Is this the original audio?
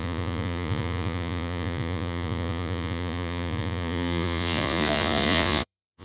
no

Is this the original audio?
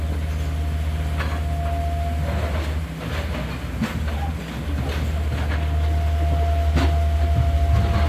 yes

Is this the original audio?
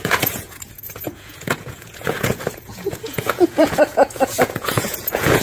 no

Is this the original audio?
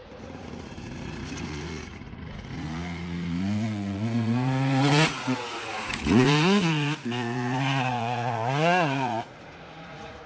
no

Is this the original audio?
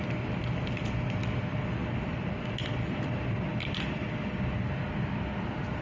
yes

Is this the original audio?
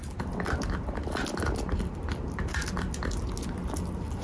yes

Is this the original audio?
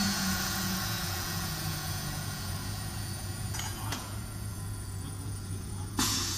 no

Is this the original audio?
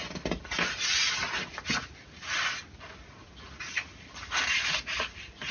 yes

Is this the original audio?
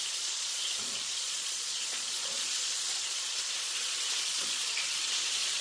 no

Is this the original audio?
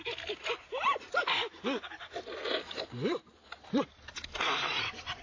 yes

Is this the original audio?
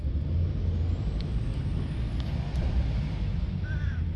yes